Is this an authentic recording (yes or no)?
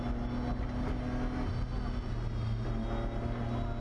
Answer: yes